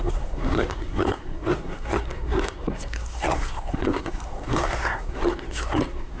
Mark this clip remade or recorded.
remade